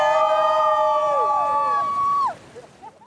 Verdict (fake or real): real